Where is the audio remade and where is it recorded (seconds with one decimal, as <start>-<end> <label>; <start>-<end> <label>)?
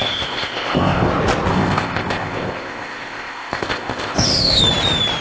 0.0-1.1 remade; 1.1-1.5 recorded; 1.5-4.6 remade; 4.6-5.2 recorded